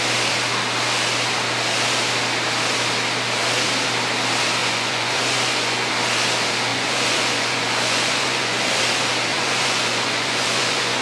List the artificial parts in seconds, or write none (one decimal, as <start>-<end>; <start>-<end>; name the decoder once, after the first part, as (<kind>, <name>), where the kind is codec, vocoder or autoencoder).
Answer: 4.6-5.9 (vocoder, Vocos); 6.7-8.8; 9.3-11.0